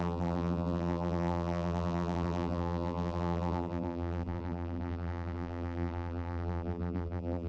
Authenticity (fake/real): fake